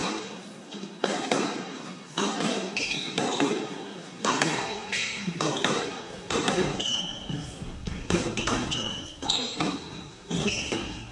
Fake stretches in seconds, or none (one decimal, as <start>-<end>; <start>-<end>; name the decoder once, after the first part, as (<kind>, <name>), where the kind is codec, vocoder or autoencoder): 0.0-11.1 (codec, SNAC)